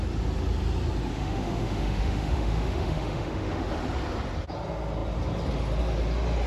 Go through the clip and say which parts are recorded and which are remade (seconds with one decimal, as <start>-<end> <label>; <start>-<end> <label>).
0.0-1.1 recorded; 1.1-3.7 remade; 3.7-6.5 recorded

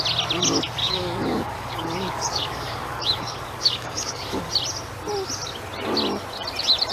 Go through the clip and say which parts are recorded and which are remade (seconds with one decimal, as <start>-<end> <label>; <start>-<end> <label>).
0.0-0.8 recorded; 0.8-4.5 remade; 4.5-6.9 recorded